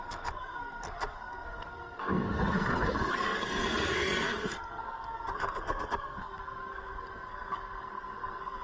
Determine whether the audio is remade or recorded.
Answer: remade